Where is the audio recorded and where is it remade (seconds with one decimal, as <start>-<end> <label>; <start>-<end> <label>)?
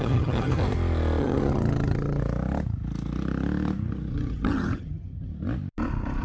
0.0-0.6 remade; 0.6-1.2 recorded; 1.2-2.2 remade; 2.2-4.1 recorded; 4.1-5.3 remade; 5.3-6.2 recorded